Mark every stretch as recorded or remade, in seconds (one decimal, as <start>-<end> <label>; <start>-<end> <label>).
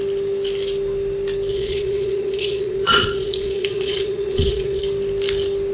0.0-1.5 recorded; 1.5-4.8 remade; 4.8-5.7 recorded